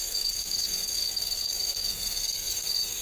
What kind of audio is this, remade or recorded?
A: remade